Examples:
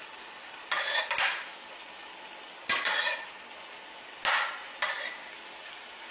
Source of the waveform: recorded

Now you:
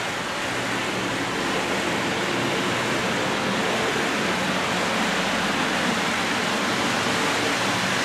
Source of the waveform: recorded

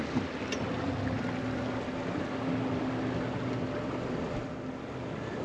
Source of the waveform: recorded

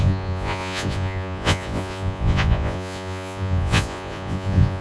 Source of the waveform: remade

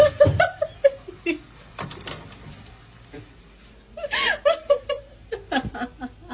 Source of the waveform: recorded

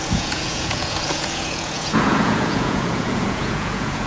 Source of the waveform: remade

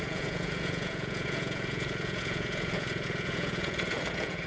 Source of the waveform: remade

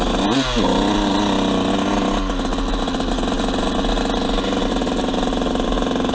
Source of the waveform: recorded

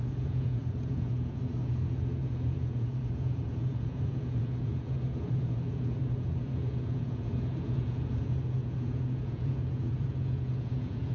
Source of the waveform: remade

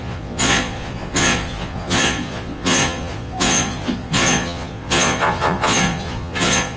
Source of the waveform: remade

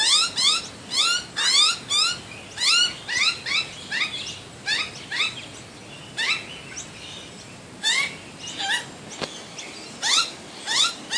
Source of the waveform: recorded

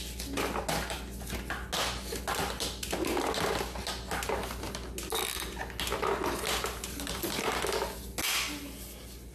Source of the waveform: recorded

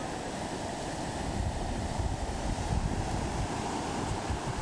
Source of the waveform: recorded